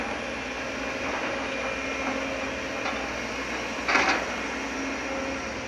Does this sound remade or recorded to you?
recorded